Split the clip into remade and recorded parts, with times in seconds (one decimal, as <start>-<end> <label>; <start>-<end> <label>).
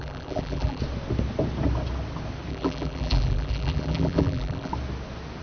0.0-0.8 remade; 0.8-2.5 recorded; 2.5-4.7 remade; 4.7-5.4 recorded